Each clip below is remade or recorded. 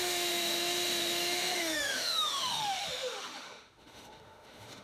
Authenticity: remade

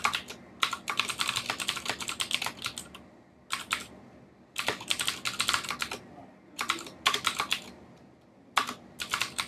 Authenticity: recorded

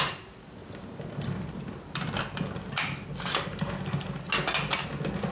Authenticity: recorded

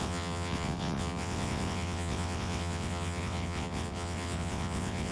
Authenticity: remade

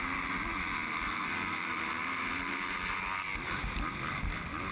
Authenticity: recorded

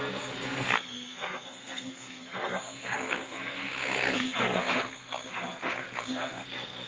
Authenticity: remade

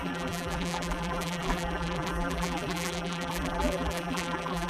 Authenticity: remade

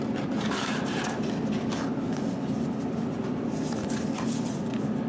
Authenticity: recorded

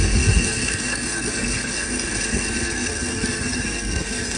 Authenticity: remade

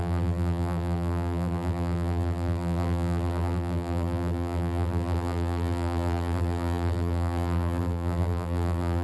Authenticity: remade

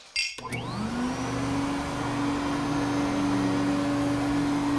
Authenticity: recorded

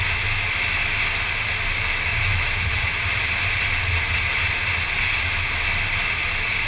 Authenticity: recorded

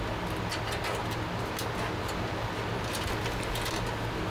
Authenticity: recorded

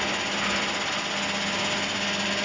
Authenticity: recorded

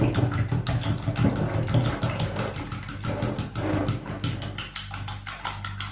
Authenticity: recorded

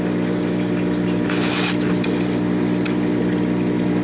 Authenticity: recorded